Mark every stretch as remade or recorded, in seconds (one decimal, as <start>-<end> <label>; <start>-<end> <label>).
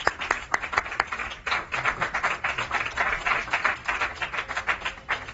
0.0-5.3 recorded